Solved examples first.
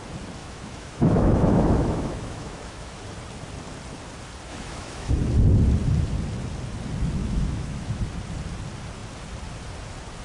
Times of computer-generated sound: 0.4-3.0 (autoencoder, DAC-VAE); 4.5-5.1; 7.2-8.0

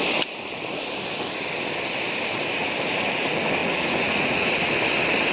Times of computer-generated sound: 3.6-4.7 (vocoder, Vocos)

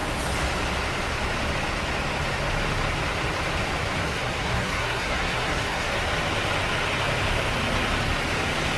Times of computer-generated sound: 4.0-5.9 (codec, SNAC)

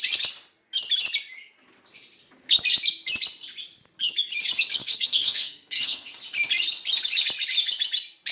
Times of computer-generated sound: 4.8-6.2 (codec, SNAC)

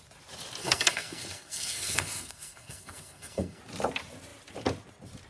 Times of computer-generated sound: 0.6-3.6 (codec, SNAC)

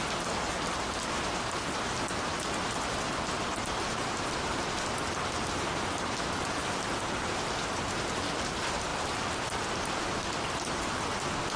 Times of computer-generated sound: none